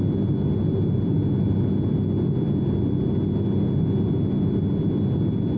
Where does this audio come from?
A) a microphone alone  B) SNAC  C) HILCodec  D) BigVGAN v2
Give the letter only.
A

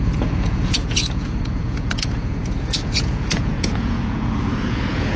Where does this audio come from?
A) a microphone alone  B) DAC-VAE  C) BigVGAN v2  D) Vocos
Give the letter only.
D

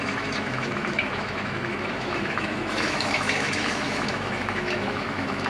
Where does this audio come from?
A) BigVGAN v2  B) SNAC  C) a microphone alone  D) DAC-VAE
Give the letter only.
D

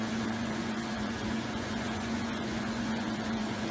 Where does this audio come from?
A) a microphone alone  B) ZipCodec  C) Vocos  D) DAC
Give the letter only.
C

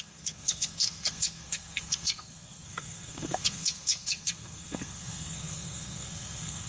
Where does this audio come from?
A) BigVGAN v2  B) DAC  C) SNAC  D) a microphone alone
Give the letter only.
C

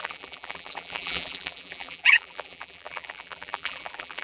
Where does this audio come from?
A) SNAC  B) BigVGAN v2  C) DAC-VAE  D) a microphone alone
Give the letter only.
B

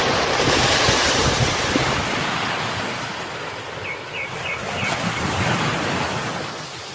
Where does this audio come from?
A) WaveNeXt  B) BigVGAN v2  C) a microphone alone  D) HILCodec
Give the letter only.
C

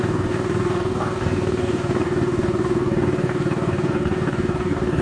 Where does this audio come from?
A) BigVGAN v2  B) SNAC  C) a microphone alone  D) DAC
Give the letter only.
D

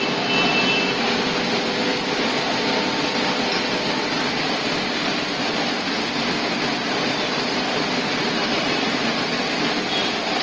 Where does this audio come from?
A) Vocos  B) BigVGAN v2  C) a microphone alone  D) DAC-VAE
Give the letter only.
C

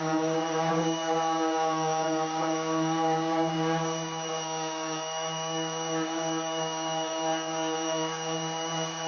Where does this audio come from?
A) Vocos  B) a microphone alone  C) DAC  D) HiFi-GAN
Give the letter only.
C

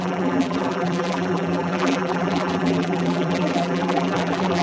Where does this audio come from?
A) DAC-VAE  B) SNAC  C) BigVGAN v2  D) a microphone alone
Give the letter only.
C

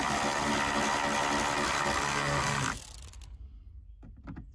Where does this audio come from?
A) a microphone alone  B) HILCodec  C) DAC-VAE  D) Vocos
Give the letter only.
A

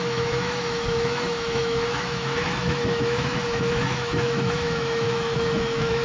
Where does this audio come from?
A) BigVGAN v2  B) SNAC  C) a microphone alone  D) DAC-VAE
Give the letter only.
D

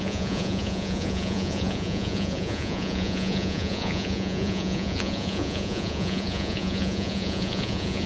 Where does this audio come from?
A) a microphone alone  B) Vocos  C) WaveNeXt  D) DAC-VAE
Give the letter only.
B